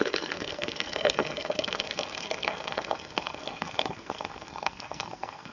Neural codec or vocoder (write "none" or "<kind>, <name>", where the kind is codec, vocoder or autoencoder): codec, SNAC